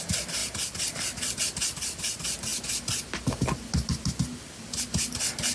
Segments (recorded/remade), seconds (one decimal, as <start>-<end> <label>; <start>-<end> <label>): 0.0-5.5 recorded